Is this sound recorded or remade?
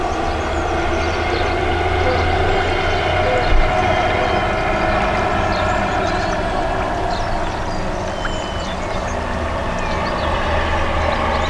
recorded